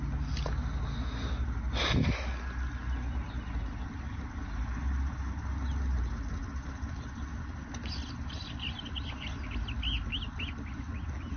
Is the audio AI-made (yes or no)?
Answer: no